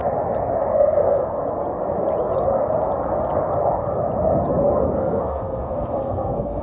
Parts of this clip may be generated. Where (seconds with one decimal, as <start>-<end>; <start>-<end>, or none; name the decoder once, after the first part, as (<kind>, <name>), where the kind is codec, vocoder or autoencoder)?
0.7-1.4 (codec, SNAC); 5.0-6.6